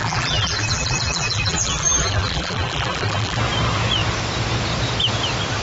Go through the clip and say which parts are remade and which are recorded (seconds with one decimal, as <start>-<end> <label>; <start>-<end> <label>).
0.0-3.4 remade; 3.4-5.6 recorded